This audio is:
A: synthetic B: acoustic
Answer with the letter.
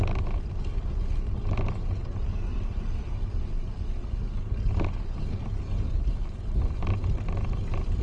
B